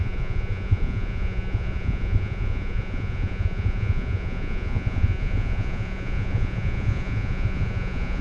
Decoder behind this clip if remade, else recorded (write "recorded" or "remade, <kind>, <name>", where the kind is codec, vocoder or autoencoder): remade, vocoder, Vocos